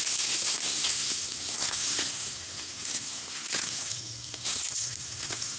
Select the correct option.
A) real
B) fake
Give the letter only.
B